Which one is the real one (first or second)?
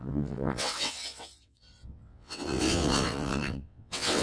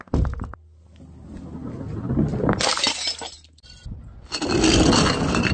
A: second